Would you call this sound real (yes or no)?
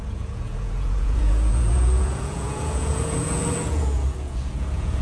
no